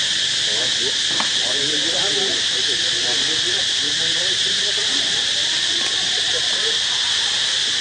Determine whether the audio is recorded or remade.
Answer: recorded